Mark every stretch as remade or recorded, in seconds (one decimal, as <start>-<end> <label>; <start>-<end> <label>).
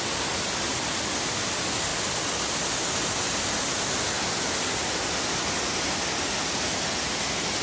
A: 0.0-7.6 recorded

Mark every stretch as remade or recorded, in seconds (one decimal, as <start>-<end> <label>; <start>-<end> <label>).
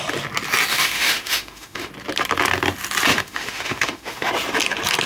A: 0.0-0.7 recorded; 0.7-1.9 remade; 1.9-3.1 recorded; 3.1-4.3 remade; 4.3-5.1 recorded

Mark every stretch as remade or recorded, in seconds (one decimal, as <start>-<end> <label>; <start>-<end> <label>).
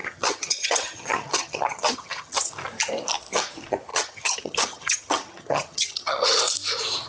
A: 0.0-2.5 remade; 2.5-3.9 recorded; 3.9-6.4 remade; 6.4-7.1 recorded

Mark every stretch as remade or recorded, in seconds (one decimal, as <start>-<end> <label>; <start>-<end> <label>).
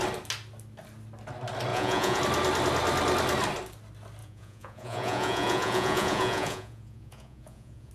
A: 0.0-1.7 recorded; 1.7-2.2 remade; 2.2-4.2 recorded; 4.2-7.9 remade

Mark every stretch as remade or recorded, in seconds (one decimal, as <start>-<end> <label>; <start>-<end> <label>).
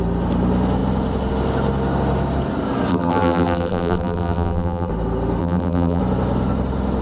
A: 0.0-2.9 recorded; 2.9-4.9 remade; 4.9-5.4 recorded; 5.4-6.0 remade; 6.0-7.0 recorded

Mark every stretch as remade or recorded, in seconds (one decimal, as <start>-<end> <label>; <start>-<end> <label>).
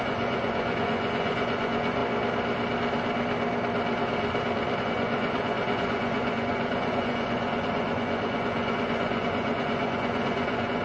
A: 0.0-2.0 remade; 2.0-4.8 recorded; 4.8-10.8 remade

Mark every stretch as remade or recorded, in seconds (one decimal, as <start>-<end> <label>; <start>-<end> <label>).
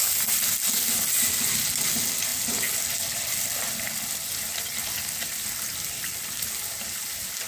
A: 0.0-7.5 recorded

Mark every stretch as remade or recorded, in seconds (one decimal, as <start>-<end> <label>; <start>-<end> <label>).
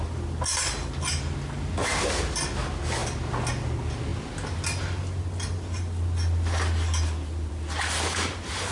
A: 0.0-8.7 recorded